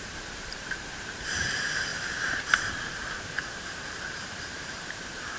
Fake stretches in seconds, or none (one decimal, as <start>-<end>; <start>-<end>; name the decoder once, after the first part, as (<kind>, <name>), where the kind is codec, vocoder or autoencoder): 0.0-5.4 (vocoder, BigVGAN v2)